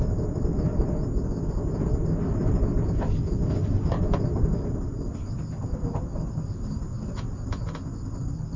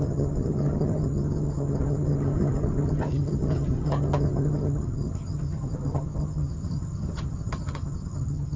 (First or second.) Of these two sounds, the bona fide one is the first